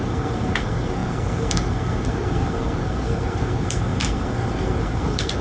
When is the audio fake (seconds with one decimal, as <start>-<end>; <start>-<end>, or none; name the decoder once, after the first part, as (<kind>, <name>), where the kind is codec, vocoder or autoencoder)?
0.0-5.4 (codec, SNAC)